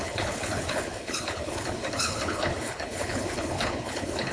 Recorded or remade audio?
remade